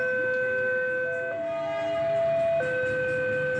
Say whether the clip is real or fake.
real